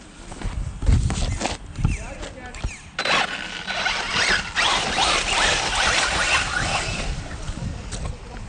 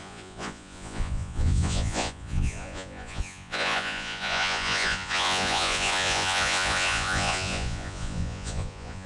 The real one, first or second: first